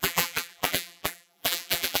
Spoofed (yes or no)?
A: yes